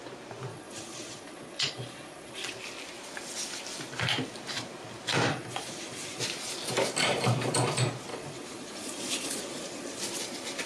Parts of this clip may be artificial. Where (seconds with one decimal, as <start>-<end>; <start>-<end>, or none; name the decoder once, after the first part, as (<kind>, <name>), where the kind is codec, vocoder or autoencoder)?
0.5-2.5 (vocoder, Vocos); 5.3-6.2; 8.1-10.0